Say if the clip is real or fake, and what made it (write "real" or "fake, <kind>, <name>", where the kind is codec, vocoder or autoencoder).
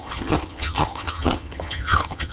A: fake, vocoder, HiFi-GAN